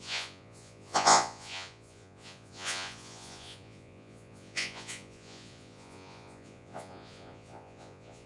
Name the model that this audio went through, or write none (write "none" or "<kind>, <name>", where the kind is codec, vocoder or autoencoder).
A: vocoder, Vocos